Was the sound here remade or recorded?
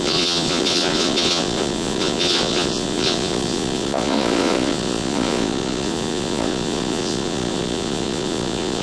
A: remade